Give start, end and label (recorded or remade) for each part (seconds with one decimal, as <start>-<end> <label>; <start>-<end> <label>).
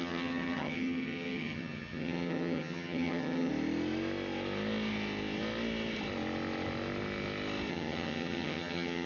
0.0-3.5 remade; 3.5-7.7 recorded; 7.7-9.1 remade